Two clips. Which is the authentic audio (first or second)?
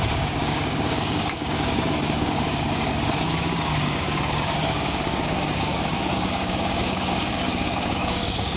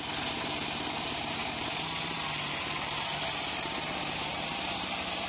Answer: second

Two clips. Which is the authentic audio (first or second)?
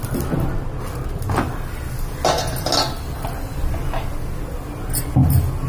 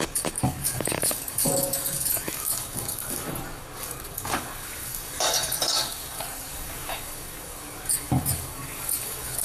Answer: first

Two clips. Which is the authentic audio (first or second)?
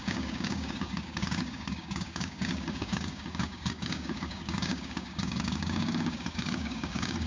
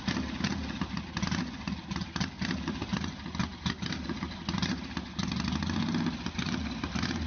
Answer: second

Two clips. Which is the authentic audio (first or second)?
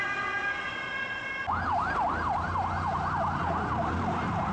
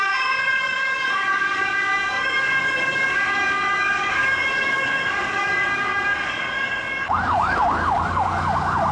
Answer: first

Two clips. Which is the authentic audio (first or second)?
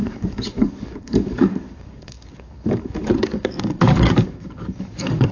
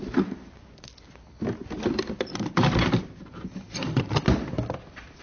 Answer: second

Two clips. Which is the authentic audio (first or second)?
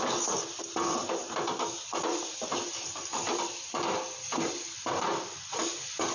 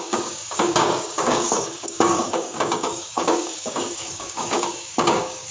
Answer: first